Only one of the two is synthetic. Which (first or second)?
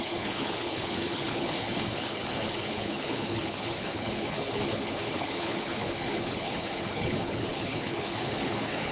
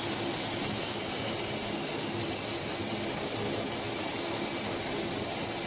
first